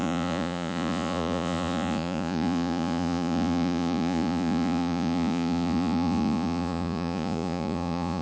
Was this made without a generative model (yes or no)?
no